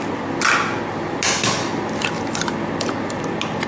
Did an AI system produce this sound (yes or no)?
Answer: no